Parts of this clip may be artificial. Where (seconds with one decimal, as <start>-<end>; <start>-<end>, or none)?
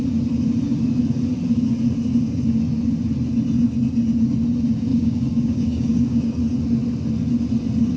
4.9-6.4